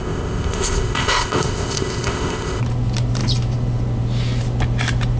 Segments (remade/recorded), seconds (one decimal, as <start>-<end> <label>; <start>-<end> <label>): 0.0-2.6 remade; 2.6-5.2 recorded